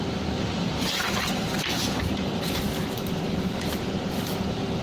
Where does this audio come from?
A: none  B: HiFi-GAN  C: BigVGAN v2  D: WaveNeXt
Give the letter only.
C